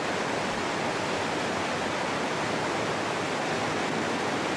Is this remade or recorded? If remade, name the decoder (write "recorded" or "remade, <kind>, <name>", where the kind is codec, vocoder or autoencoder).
recorded